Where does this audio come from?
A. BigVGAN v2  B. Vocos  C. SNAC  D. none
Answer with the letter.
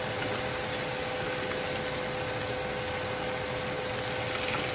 D